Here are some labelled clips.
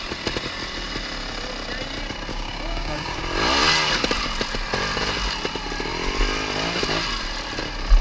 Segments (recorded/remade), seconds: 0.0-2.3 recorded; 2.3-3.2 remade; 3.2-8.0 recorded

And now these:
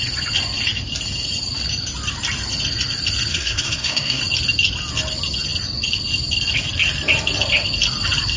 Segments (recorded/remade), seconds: 0.0-3.3 recorded; 3.3-4.2 remade; 4.2-8.4 recorded

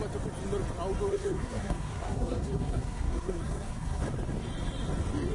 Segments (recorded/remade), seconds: 0.0-1.1 recorded; 1.1-4.0 remade; 4.0-5.3 recorded

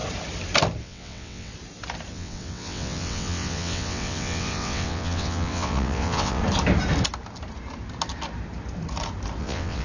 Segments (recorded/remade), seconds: 0.0-0.8 recorded; 0.8-1.5 remade; 1.5-2.1 recorded; 2.1-6.4 remade; 6.4-9.4 recorded; 9.4-9.8 remade

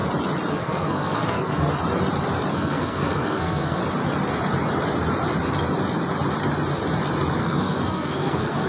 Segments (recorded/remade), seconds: 0.0-0.5 recorded; 0.5-1.7 remade; 1.7-2.5 recorded; 2.5-3.8 remade; 3.8-7.4 recorded; 7.4-8.7 remade

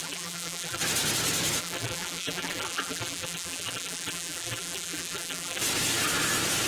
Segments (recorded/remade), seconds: 0.0-0.8 remade; 0.8-1.6 recorded; 1.6-5.6 remade; 5.6-6.7 recorded

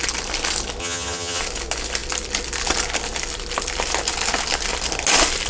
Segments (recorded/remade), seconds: 0.0-0.8 recorded; 0.8-1.4 remade; 1.4-5.5 recorded